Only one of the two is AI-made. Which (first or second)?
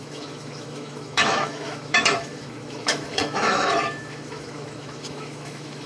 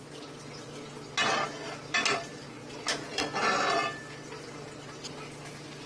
first